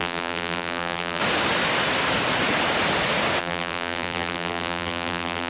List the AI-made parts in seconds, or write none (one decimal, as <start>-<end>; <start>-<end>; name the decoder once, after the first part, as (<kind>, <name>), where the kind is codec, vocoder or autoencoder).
0.0-1.2 (vocoder, BigVGAN v2); 3.4-5.5